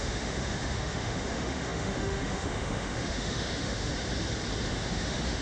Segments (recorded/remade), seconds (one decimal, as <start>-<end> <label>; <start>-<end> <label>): 0.0-3.9 remade; 3.9-4.7 recorded; 4.7-5.4 remade